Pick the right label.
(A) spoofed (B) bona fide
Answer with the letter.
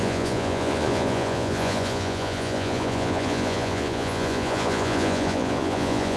A